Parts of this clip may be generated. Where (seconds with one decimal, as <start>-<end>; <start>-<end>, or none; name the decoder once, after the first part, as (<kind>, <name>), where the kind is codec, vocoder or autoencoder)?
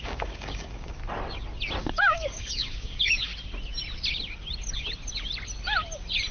0.0-1.0 (codec, DAC); 1.8-3.3